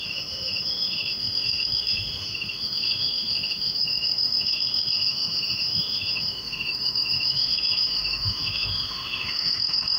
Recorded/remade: remade